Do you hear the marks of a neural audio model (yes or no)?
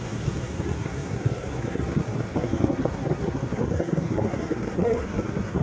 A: yes